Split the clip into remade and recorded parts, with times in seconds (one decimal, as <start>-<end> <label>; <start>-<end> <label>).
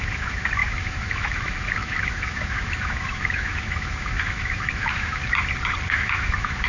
0.0-5.2 remade; 5.2-5.9 recorded; 5.9-6.7 remade